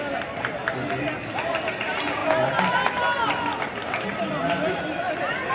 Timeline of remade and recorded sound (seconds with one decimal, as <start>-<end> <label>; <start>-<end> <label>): 0.0-5.5 recorded